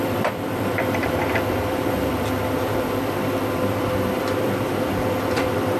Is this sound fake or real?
fake